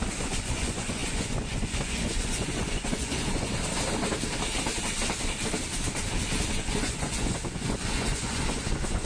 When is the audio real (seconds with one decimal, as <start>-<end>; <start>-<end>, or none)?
3.5-6.5